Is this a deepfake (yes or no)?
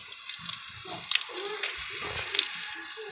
no